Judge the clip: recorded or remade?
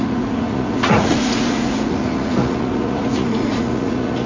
remade